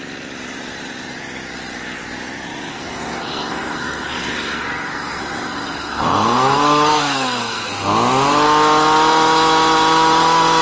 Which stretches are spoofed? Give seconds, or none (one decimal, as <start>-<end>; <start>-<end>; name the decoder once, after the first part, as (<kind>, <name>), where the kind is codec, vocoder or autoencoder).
2.7-7.7 (codec, SNAC)